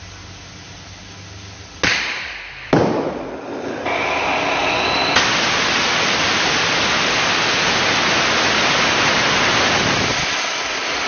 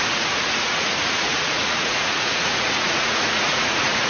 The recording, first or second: first